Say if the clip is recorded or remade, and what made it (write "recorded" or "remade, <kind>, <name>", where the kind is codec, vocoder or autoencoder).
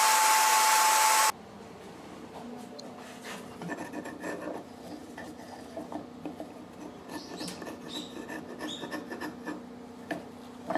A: recorded